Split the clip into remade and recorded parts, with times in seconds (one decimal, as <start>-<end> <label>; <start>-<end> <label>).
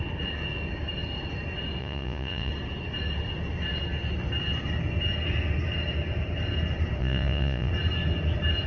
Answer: 0.0-1.8 recorded; 1.8-2.5 remade; 2.5-7.0 recorded; 7.0-7.7 remade; 7.7-8.7 recorded